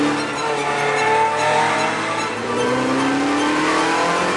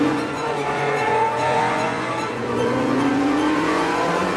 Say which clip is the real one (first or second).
first